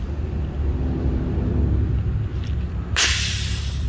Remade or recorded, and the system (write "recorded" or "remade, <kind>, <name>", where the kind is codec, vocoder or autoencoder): recorded